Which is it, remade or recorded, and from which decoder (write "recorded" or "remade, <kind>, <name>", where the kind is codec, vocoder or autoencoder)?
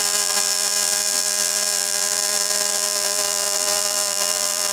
remade, vocoder, BigVGAN v2